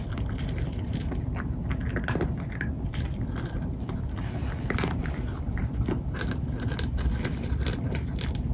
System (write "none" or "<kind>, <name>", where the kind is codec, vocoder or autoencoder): none